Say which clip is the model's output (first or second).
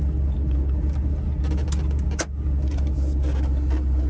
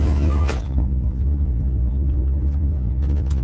second